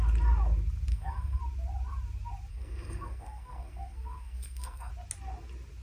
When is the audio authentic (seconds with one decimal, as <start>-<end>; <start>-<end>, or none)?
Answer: 0.0-0.9; 1.4-2.5; 4.9-5.8